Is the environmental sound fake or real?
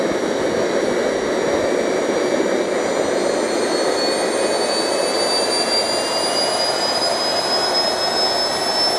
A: real